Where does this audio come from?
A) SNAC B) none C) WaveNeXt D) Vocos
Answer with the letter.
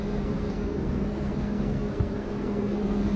A